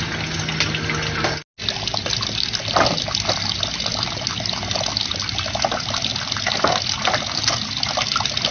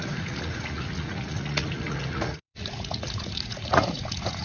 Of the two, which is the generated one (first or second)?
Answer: second